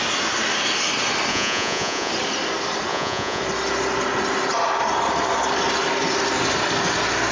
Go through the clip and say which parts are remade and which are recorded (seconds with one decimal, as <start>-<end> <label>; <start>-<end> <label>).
0.0-1.3 recorded; 1.3-2.1 remade; 2.1-2.9 recorded; 2.9-3.4 remade; 3.4-7.3 recorded